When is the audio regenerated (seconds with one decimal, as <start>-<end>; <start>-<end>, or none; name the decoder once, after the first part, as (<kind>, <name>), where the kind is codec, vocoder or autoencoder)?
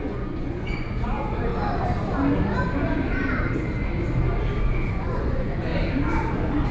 0.0-1.5 (vocoder, Vocos); 4.6-5.7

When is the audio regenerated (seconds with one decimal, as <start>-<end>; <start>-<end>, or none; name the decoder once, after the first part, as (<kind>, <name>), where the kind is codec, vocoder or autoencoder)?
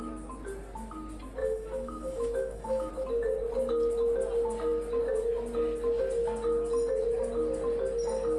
1.4-2.9 (autoencoder, DAC-VAE)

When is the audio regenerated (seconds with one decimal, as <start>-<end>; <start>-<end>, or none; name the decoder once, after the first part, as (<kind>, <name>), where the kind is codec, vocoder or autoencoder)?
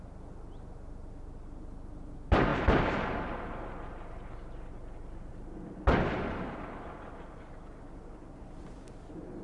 none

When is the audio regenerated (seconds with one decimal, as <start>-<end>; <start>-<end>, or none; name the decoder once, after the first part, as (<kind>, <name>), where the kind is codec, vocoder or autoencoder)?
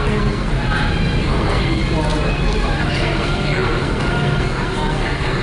0.0-0.5 (codec, SNAC); 1.2-1.8; 2.3-5.4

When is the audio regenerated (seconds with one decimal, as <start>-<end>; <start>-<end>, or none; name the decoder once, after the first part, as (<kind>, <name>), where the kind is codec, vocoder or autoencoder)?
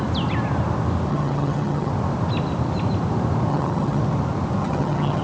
1.1-1.9 (vocoder, HiFi-GAN); 3.5-4.0; 4.6-5.2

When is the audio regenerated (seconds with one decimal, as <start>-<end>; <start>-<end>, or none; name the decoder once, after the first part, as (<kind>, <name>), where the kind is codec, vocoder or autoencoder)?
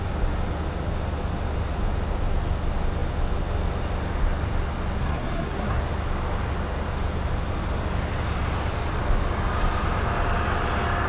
5.0-5.8 (codec, SNAC)